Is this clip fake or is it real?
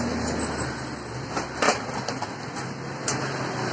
real